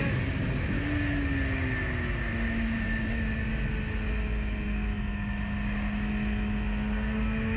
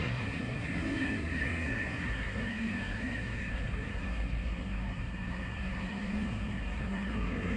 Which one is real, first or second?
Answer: first